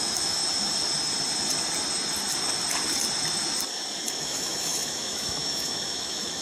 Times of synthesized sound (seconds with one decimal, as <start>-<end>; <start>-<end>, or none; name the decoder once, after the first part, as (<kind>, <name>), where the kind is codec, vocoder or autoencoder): 0.0-0.4 (autoencoder, DAC-VAE); 4.2-6.4